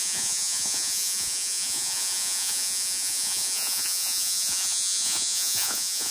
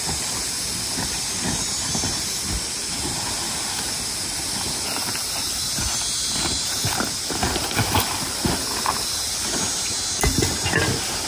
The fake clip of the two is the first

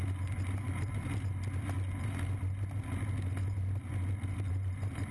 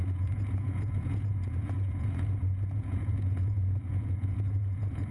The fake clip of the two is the second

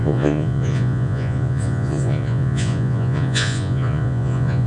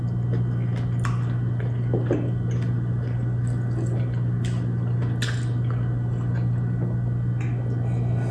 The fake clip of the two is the first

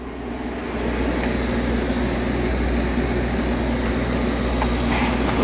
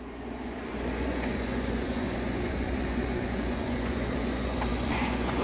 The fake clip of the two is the second